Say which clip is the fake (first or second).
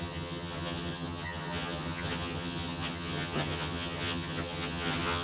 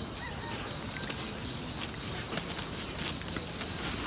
first